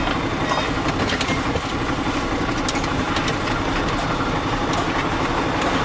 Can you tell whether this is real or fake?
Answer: real